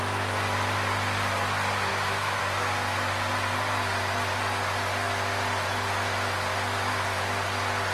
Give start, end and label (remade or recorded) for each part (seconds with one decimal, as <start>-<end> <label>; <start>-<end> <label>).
0.0-1.9 recorded; 1.9-2.4 remade; 2.4-7.9 recorded